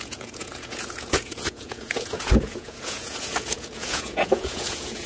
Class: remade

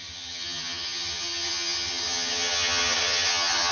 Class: remade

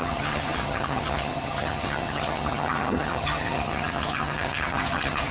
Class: remade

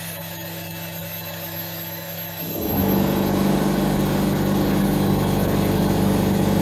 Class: remade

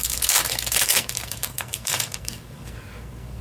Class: remade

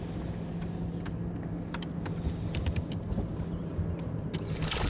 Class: recorded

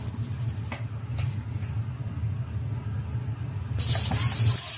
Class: recorded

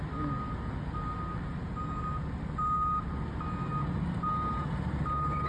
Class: recorded